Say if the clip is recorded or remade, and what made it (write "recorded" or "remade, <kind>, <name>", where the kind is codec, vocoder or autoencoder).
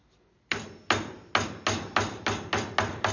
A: recorded